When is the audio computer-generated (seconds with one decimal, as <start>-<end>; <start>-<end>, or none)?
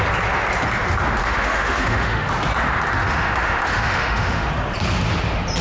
1.2-2.3; 3.0-4.5